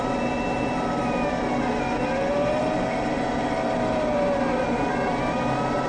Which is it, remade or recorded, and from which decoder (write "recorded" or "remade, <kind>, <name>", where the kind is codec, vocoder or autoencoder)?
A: recorded